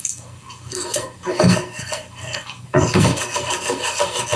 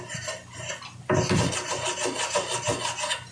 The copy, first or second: first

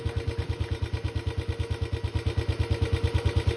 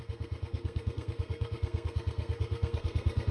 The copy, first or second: second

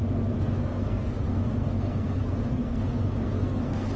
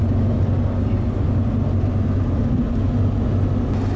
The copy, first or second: first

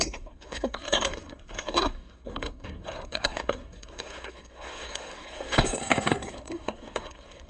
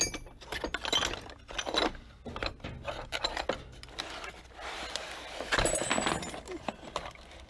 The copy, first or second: first